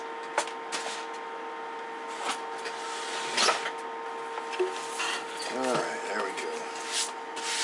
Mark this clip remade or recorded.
recorded